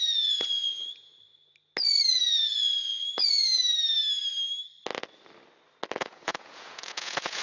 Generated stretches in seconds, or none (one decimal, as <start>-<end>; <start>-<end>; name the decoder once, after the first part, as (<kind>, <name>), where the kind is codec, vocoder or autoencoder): 0.0-1.1 (vocoder, Vocos); 2.1-3.6; 6.0-7.4